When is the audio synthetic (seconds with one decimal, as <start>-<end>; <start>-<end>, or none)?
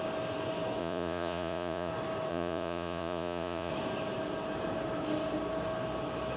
0.8-1.9; 2.3-3.7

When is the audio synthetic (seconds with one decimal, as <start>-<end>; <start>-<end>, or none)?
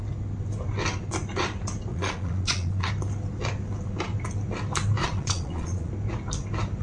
1.9-2.9; 5.0-5.9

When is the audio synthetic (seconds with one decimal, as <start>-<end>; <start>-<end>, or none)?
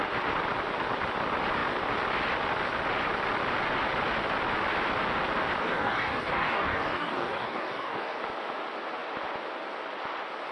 5.6-8.2